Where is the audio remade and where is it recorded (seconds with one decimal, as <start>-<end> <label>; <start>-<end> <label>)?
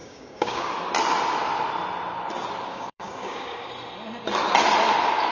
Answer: 0.0-0.7 remade; 0.7-2.7 recorded; 2.7-3.7 remade; 3.7-5.3 recorded